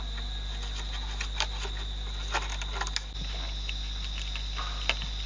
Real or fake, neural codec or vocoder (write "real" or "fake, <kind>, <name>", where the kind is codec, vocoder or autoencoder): real